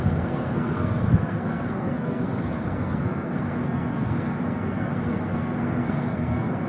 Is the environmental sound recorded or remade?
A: remade